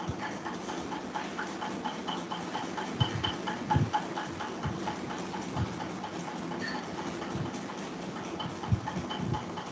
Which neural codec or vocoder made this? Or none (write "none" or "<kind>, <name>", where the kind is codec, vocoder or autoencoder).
none